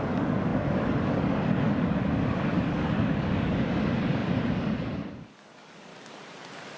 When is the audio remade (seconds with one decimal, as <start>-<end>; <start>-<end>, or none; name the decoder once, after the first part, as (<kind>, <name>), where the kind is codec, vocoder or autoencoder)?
0.0-5.9 (codec, DAC)